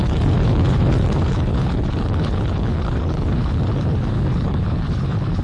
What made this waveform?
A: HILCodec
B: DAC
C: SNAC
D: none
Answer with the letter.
A